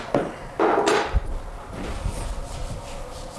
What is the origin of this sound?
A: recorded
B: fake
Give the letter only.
A